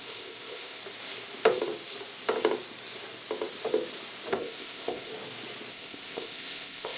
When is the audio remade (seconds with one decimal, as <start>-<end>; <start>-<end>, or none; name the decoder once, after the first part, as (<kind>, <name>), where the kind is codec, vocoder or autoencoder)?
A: 0.0-0.8 (codec, ZipCodec); 4.3-5.1; 5.7-7.0